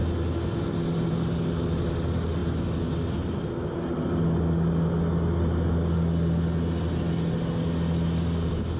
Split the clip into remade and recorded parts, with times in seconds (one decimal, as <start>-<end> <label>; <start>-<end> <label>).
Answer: 0.0-8.8 recorded